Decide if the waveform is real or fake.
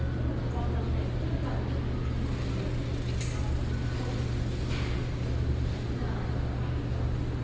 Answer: real